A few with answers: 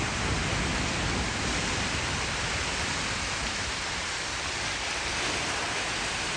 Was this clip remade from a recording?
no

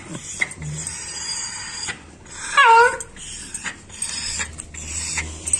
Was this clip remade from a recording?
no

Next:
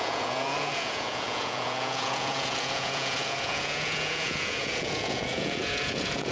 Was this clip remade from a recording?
yes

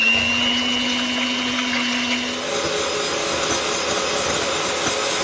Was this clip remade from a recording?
no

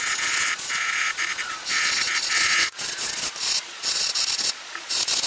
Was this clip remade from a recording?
yes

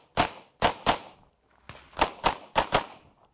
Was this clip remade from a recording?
no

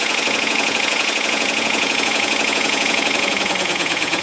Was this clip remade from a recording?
yes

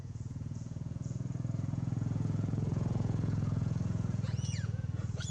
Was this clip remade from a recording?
yes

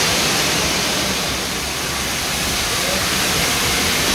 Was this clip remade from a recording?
no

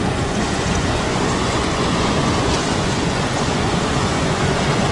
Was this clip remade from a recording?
yes